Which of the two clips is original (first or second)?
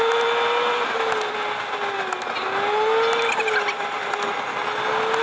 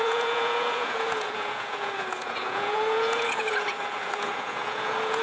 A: first